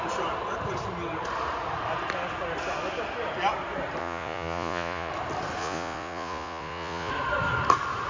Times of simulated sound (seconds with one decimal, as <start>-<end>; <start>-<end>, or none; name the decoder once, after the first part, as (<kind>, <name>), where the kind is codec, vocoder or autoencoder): 4.0-5.1 (vocoder, Vocos); 5.6-7.1

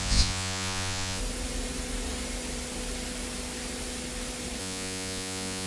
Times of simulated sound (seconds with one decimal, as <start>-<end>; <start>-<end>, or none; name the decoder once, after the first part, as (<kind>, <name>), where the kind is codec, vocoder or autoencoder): 0.0-1.2 (vocoder, Vocos); 4.6-5.7